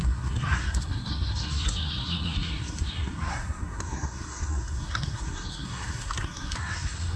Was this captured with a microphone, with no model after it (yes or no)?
no